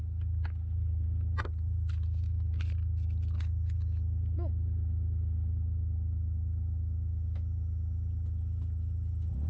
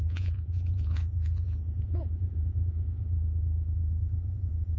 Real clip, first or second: first